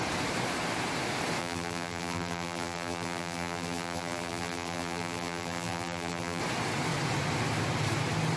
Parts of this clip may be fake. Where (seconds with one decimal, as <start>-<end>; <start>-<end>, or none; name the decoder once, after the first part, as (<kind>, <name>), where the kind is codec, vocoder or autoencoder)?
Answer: 1.4-6.4 (vocoder, BigVGAN v2)